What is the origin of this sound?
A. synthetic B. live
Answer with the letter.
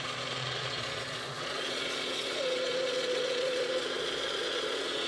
A